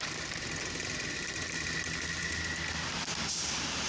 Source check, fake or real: real